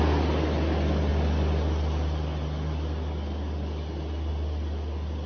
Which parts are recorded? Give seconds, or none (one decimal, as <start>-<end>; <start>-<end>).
0.0-5.3